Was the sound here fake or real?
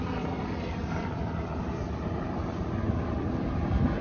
fake